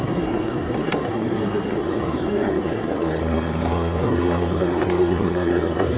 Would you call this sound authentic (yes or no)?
no